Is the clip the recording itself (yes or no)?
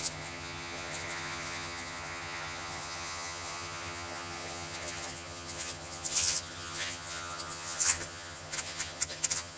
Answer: no